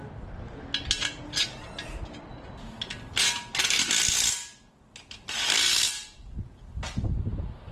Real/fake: real